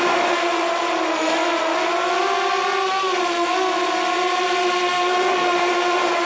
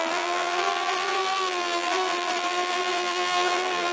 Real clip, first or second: first